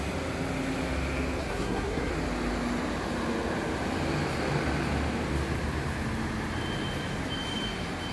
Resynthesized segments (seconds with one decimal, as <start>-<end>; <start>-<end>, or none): 1.4-2.1